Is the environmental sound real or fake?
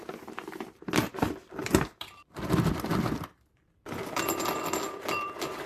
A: fake